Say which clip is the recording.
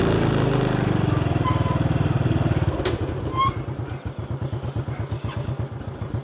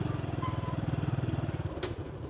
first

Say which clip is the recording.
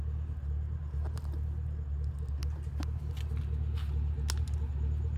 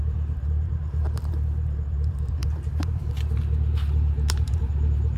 first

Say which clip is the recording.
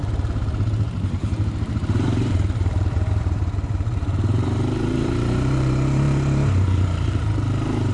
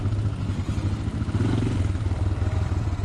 second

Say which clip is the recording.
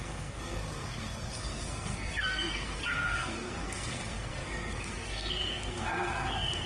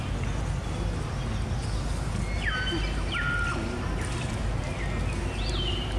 second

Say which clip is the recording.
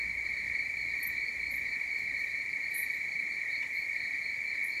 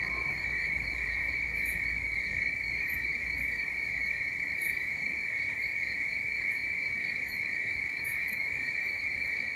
first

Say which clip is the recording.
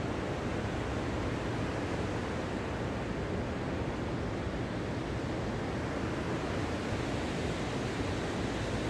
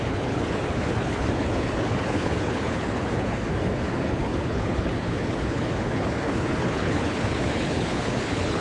first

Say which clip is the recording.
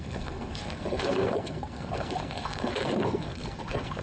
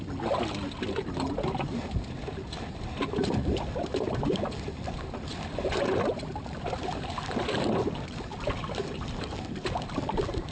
second